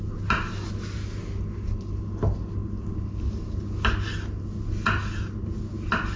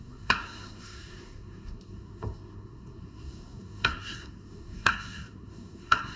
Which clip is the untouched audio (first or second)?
first